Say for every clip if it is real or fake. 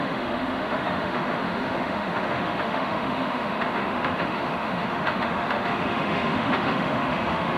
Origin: fake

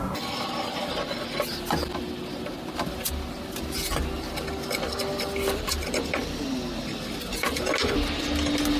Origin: real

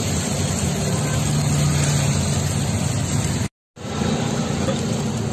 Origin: real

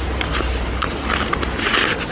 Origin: real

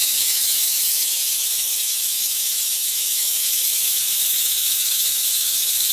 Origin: fake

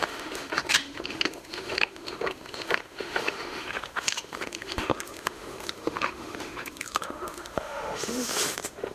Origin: fake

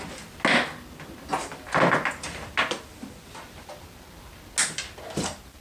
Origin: real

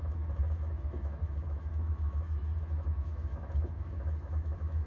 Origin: fake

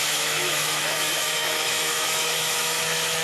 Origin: fake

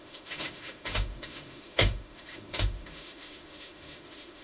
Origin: fake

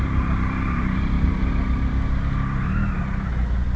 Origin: real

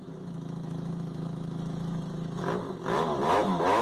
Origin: fake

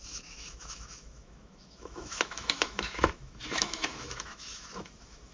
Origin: fake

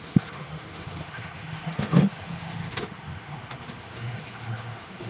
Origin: fake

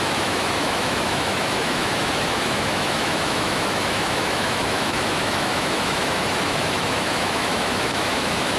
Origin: fake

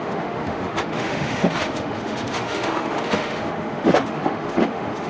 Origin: fake